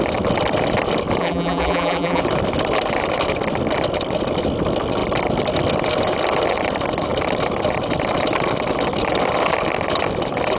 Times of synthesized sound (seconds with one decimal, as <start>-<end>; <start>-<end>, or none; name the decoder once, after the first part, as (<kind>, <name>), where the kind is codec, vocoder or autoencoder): 1.2-2.2 (vocoder, BigVGAN v2)

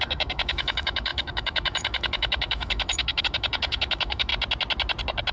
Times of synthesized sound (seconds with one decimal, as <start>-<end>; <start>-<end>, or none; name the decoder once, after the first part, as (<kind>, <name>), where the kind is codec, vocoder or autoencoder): 0.0-4.3 (autoencoder, DAC-VAE)

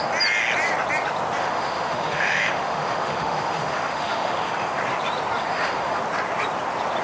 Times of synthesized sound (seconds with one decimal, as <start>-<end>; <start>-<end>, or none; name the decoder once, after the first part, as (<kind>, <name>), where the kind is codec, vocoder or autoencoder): 1.4-4.8 (autoencoder, DAC-VAE); 5.4-6.0

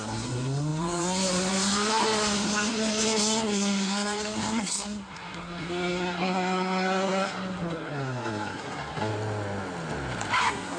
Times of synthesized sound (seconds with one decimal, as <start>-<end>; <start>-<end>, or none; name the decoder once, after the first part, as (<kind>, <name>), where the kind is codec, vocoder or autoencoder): 0.0-9.1 (codec, SNAC); 10.4-10.8